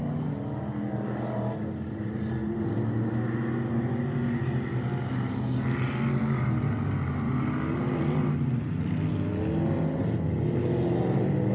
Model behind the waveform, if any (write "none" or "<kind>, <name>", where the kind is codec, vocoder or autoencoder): none